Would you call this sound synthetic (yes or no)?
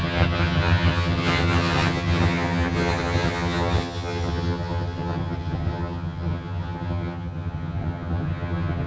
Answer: yes